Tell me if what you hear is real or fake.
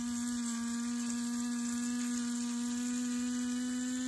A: real